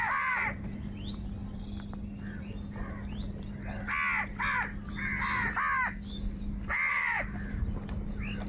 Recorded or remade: recorded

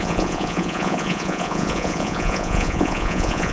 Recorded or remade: remade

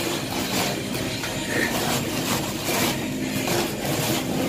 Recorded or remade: recorded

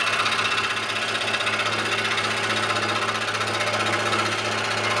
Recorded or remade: recorded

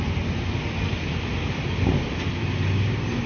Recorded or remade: recorded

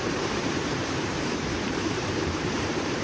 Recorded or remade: remade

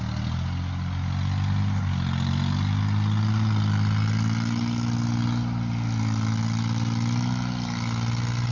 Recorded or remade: recorded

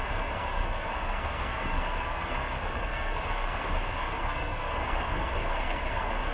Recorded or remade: remade